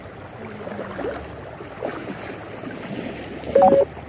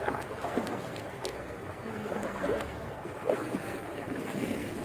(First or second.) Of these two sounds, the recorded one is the first